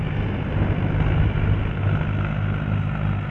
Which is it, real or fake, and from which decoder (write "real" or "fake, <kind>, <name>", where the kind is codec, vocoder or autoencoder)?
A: real